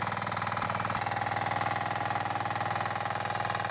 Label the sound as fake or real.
real